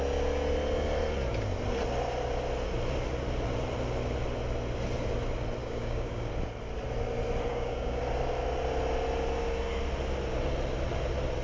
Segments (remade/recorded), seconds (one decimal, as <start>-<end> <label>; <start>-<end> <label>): 0.0-5.6 recorded; 5.6-6.3 remade; 6.3-7.5 recorded; 7.5-8.0 remade; 8.0-11.4 recorded